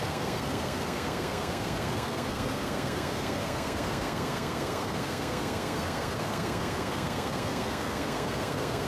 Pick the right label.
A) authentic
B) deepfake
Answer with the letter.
B